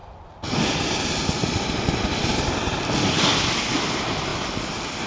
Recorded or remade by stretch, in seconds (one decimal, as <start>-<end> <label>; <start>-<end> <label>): 0.0-5.1 recorded